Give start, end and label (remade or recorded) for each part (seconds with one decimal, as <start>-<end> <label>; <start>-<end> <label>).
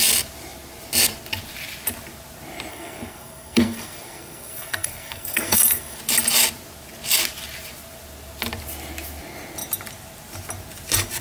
0.0-2.7 recorded; 2.7-6.0 remade; 6.0-11.2 recorded